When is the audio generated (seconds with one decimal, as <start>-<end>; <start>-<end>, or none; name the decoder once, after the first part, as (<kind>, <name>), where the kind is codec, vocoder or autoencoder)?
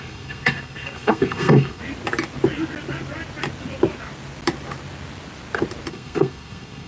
0.0-1.8 (codec, SNAC); 5.9-6.9